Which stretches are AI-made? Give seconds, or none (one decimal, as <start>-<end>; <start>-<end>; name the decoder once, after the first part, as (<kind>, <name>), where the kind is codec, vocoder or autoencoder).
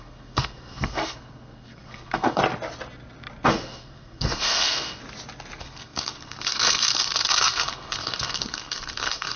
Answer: 0.0-2.4 (codec, SNAC); 3.5-5.0; 5.6-9.4